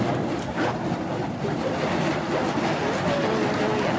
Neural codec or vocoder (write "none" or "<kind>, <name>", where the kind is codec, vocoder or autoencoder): none